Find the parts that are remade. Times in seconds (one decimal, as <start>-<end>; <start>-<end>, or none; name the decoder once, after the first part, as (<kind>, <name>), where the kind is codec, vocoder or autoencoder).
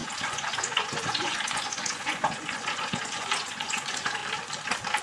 0.0-4.2 (vocoder, Vocos)